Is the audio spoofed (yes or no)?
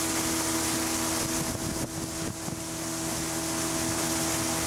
no